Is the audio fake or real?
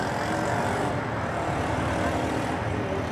real